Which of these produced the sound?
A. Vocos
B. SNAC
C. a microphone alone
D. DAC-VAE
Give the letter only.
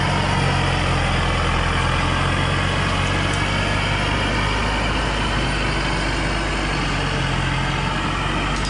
C